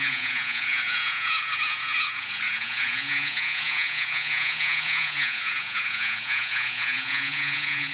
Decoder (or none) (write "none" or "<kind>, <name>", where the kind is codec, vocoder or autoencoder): vocoder, Vocos